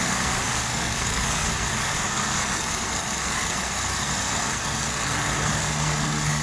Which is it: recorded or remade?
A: remade